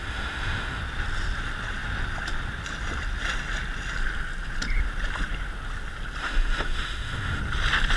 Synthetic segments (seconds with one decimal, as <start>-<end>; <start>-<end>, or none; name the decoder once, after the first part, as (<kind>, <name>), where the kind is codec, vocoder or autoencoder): 0.0-0.8 (autoencoder, DAC-VAE); 6.2-7.4